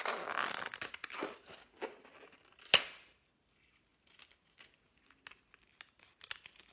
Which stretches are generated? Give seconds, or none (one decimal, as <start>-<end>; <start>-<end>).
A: none